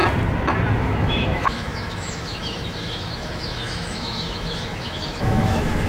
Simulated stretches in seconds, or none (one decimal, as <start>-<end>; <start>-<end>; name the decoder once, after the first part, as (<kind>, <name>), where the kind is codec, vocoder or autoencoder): 0.8-5.9 (autoencoder, DAC-VAE)